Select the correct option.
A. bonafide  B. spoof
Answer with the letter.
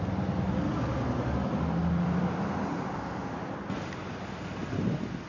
A